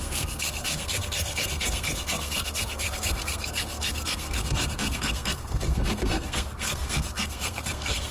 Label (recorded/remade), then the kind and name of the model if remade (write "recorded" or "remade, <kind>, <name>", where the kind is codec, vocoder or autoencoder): remade, codec, SNAC